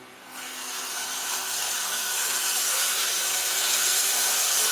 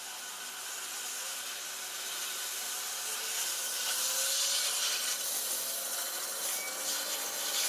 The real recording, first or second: second